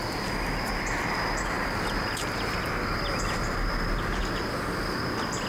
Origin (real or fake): real